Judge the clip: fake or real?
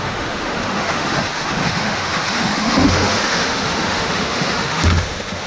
fake